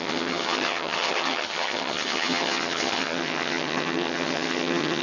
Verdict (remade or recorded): remade